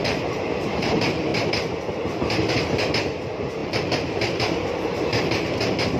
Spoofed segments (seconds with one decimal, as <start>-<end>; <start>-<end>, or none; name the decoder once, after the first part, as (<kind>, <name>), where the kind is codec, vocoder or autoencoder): 0.0-1.3 (vocoder, BigVGAN v2); 2.9-6.0